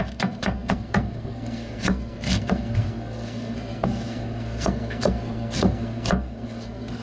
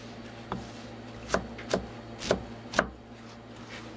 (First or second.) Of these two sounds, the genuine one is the second